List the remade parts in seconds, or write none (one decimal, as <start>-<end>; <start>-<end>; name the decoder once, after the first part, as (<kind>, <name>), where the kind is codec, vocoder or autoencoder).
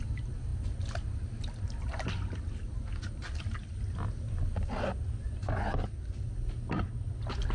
none